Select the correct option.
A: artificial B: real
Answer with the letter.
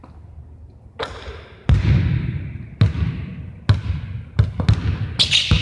B